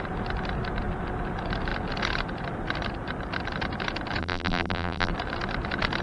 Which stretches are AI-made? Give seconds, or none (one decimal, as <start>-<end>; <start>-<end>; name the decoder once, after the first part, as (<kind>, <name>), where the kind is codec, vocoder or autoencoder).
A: 4.2-5.1 (vocoder, BigVGAN v2)